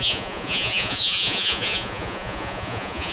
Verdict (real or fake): fake